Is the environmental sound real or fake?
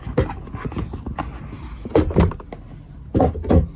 real